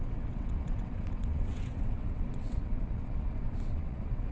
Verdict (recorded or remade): remade